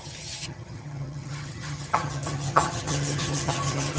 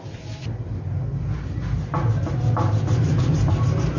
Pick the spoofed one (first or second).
first